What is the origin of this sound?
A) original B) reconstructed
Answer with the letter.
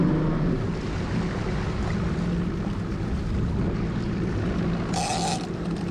A